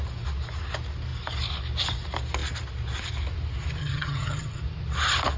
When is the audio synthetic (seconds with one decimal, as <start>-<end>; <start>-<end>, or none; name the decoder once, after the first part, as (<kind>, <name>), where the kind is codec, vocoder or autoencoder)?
3.8-4.6 (vocoder, HiFi-GAN)